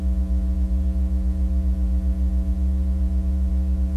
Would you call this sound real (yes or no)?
no